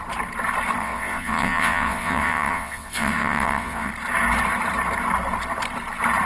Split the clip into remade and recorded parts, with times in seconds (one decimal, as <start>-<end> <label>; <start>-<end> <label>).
0.0-0.8 recorded; 0.8-3.9 remade; 3.9-6.3 recorded